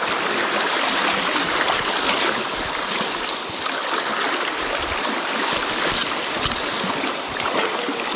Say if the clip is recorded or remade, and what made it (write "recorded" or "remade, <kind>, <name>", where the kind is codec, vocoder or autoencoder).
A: recorded